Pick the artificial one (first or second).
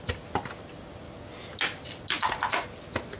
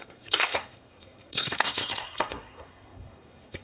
second